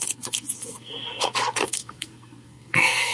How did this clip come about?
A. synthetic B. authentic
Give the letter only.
A